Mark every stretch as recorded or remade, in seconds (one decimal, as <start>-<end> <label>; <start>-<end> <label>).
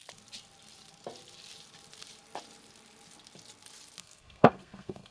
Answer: 0.0-4.0 recorded; 4.0-5.1 remade